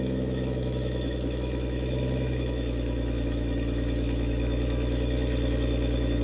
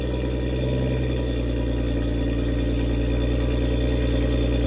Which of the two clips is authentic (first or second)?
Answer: second